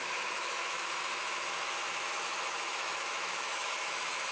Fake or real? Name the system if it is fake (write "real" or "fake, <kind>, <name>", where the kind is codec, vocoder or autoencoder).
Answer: fake, autoencoder, DAC-VAE